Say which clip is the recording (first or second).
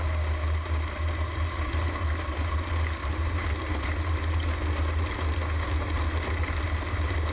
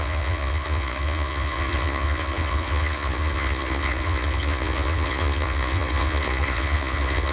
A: first